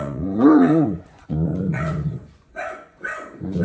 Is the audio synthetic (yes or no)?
yes